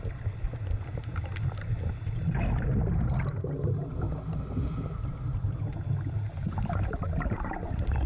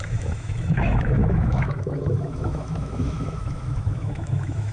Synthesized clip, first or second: second